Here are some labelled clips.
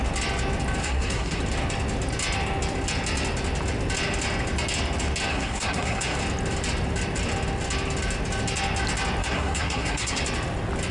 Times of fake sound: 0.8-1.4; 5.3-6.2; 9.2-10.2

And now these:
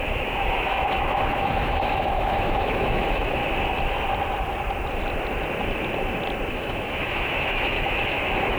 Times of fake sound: 0.0-3.4; 6.5-8.6

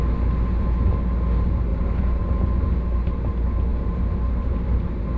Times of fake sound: 1.7-2.5; 3.7-5.2

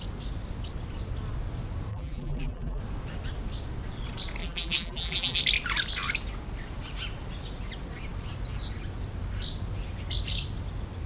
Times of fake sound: 1.9-2.8; 4.4-5.4

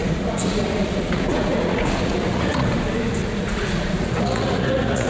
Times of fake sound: 0.0-2.7; 3.2-5.1

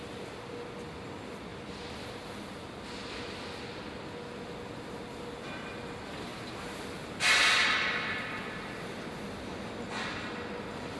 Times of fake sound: none

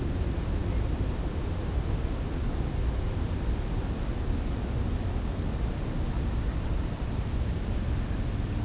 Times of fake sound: none